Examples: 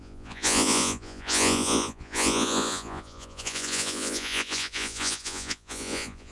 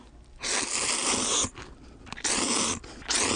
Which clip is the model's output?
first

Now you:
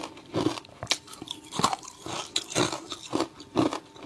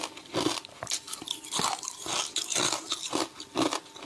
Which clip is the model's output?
first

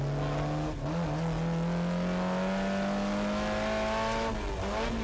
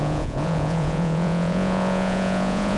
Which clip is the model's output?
second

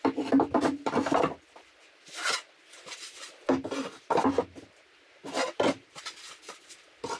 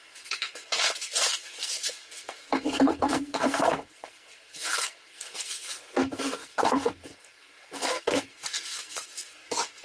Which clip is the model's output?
second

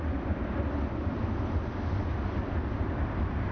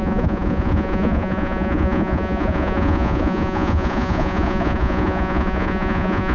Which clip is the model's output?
second